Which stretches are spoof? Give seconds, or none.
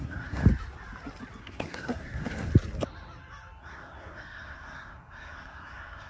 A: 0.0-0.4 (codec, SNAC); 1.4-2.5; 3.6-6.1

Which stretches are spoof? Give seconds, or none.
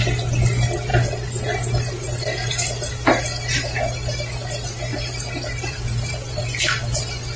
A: 4.9-6.5 (vocoder, BigVGAN v2)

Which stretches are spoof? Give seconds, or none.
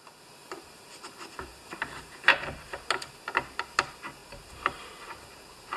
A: 0.4-1.0 (vocoder, BigVGAN v2); 1.5-2.8; 4.2-4.8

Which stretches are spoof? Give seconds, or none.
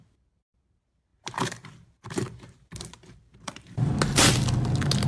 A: 1.1-2.7 (vocoder, BigVGAN v2); 3.3-3.9